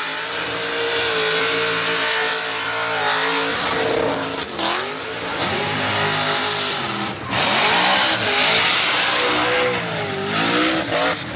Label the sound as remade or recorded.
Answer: recorded